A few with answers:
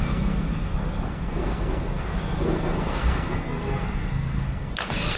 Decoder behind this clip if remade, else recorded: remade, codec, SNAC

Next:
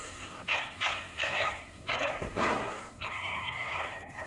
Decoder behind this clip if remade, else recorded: remade, codec, SNAC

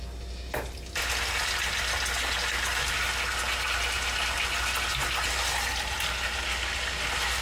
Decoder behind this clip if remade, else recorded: recorded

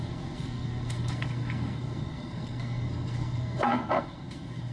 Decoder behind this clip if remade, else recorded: remade, codec, SNAC